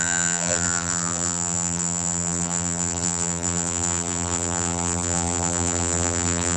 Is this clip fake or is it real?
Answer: fake